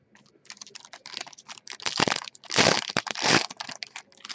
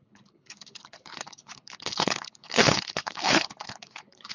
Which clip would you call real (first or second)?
first